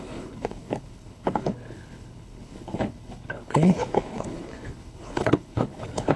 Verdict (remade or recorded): remade